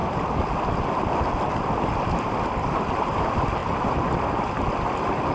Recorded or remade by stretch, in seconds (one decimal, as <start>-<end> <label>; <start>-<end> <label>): 0.0-5.3 recorded